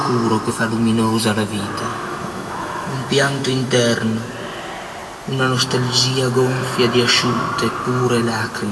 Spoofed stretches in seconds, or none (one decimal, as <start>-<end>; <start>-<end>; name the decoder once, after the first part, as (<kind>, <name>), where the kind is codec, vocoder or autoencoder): 1.9-3.7 (autoencoder, DAC-VAE)